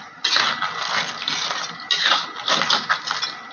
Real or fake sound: real